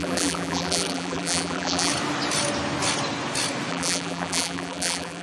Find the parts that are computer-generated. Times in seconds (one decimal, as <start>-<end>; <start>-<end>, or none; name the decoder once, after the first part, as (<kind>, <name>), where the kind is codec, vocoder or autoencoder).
0.0-1.9 (vocoder, BigVGAN v2); 3.7-5.2